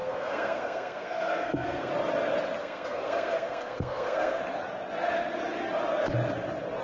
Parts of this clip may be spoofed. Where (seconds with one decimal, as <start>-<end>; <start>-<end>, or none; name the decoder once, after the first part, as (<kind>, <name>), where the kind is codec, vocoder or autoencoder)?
0.0-1.9 (codec, SNAC); 2.6-4.4